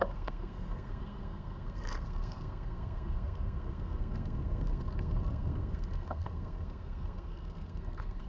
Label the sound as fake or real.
fake